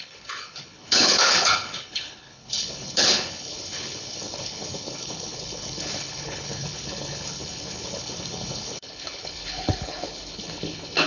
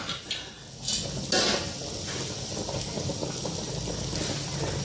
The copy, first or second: first